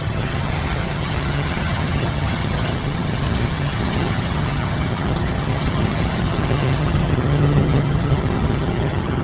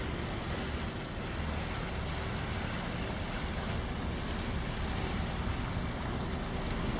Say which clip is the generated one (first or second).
first